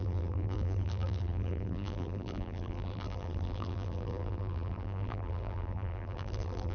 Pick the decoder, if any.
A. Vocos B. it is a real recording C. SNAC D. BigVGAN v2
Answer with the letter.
D